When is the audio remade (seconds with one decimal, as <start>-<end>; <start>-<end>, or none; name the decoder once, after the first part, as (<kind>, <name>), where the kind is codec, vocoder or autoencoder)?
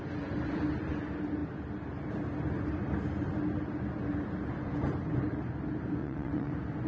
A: 6.0-6.5 (vocoder, WaveNeXt)